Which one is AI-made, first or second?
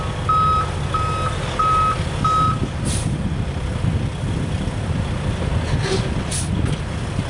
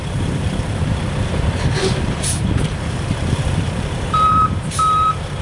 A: second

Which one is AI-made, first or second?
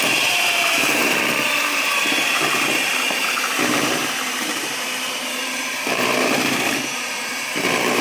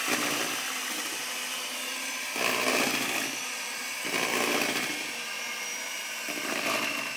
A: first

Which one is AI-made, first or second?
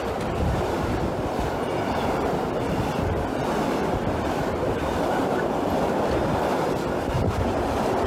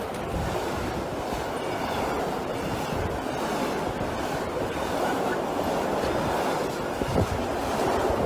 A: first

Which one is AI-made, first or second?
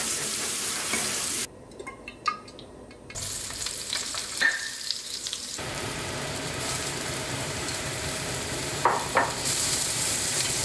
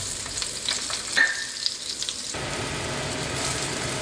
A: first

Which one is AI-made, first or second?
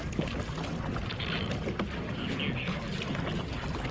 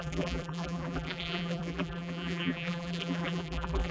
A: second